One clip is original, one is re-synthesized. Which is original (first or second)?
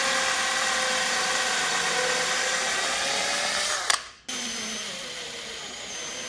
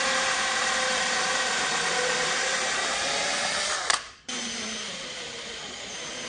first